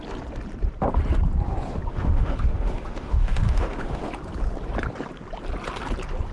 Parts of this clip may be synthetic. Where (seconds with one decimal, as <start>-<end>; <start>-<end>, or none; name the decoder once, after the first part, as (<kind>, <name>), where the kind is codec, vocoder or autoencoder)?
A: 1.9-4.1 (autoencoder, DAC-VAE)